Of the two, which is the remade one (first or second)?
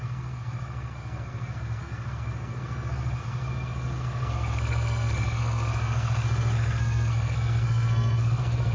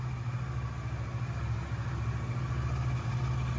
first